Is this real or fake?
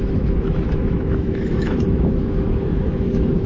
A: fake